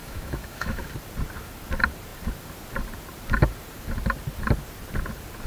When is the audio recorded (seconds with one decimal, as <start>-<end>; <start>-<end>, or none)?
0.9-5.5